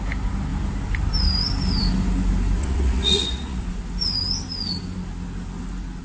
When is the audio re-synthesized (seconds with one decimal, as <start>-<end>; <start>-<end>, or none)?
2.6-3.6